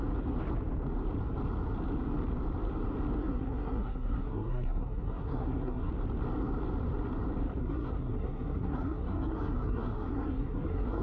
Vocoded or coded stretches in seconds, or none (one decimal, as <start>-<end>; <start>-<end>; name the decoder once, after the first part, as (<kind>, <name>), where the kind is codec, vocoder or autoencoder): 3.2-5.9 (codec, SNAC); 7.6-11.0